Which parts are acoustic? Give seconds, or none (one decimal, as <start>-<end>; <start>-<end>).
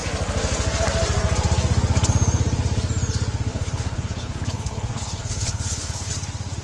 0.0-3.5; 6.1-6.6